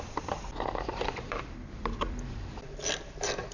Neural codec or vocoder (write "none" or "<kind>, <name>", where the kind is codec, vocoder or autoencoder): vocoder, BigVGAN v2